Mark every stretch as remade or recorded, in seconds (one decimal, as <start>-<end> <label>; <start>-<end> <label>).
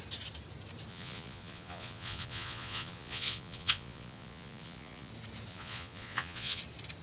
0.0-0.9 recorded; 0.9-5.1 remade; 5.1-5.5 recorded; 5.5-6.6 remade; 6.6-7.0 recorded